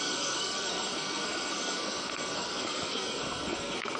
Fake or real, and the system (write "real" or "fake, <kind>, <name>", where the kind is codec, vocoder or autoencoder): fake, codec, SNAC